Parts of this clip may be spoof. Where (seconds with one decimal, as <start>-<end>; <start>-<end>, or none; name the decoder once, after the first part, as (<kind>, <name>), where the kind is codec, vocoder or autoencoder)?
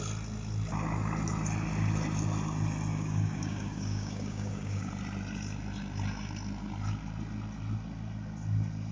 2.9-4.9 (codec, DAC)